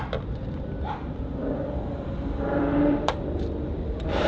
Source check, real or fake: fake